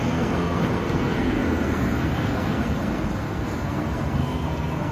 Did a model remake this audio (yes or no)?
yes